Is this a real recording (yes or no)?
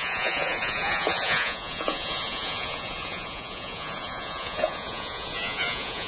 no